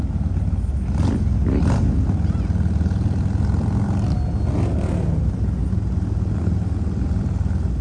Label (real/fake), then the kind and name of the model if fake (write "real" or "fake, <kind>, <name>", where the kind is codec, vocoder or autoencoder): real